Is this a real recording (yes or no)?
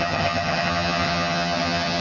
no